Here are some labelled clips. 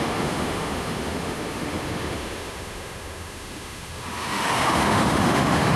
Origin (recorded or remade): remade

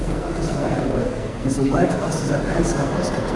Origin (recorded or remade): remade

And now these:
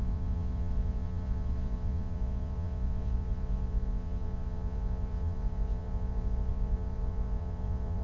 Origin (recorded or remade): remade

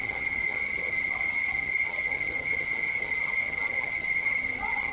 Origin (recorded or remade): remade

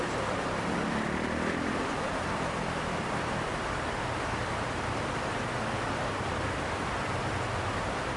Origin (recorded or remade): remade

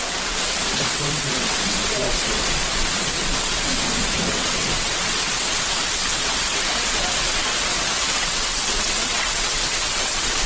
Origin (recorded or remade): remade